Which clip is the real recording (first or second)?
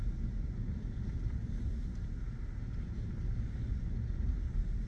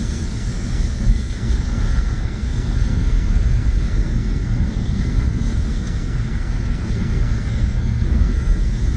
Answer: first